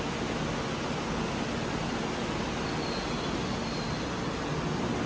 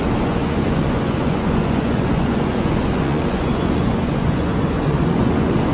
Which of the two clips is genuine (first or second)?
first